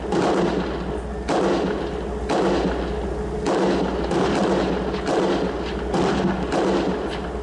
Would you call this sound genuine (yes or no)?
yes